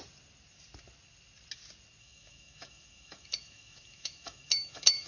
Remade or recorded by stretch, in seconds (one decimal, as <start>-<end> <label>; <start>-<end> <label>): 0.0-2.0 recorded; 2.0-5.1 remade